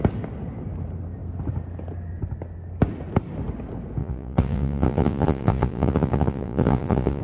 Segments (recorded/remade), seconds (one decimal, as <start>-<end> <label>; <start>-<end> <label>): 0.0-4.0 recorded; 4.0-7.2 remade